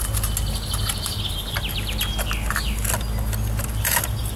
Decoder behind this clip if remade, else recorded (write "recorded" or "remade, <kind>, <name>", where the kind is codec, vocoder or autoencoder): recorded